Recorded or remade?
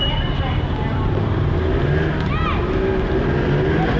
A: recorded